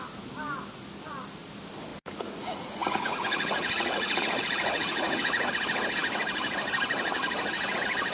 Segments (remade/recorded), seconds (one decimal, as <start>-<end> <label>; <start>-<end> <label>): 0.0-1.9 recorded; 1.9-5.5 remade; 5.5-8.1 recorded